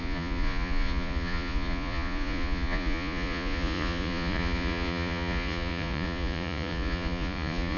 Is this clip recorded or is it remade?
remade